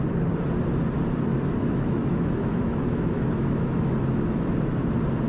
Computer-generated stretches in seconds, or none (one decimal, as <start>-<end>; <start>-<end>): 1.3-4.5

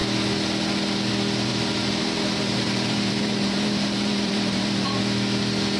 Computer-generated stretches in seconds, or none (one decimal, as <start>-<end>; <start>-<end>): 1.5-5.0

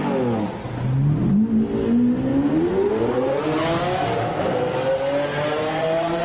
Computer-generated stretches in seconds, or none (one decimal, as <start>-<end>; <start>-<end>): 5.3-6.2